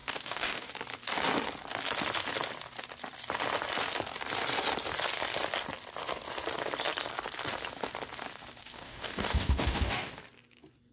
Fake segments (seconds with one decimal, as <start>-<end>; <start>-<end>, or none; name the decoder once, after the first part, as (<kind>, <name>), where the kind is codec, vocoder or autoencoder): 0.0-0.7 (codec, DAC); 8.6-10.1